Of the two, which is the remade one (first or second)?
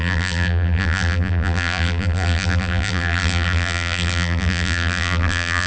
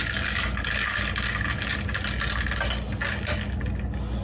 first